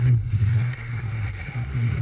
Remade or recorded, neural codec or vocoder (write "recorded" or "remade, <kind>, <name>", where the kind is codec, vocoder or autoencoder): remade, codec, SNAC